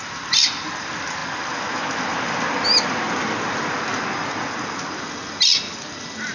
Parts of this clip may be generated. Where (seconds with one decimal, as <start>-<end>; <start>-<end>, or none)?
none